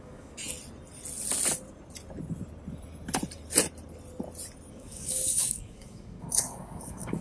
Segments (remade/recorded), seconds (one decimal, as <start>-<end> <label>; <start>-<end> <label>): 0.0-0.4 remade; 0.4-4.7 recorded; 4.7-7.2 remade